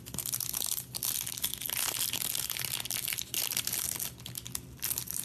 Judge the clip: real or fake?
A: real